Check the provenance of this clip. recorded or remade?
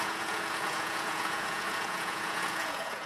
remade